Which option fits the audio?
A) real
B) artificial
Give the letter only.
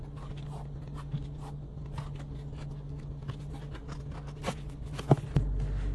A